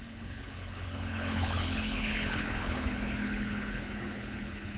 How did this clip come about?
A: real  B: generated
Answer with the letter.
B